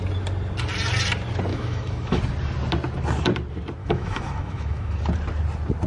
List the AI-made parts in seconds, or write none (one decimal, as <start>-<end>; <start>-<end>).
1.5-2.2; 3.8-5.0